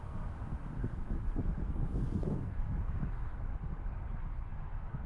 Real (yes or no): no